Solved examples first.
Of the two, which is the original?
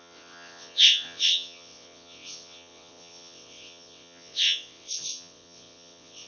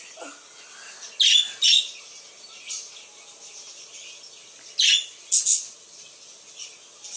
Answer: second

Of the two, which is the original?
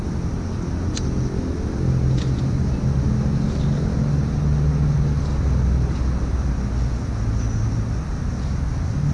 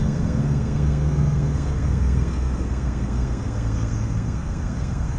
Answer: first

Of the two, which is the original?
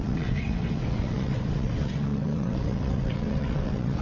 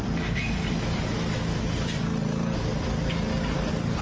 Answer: second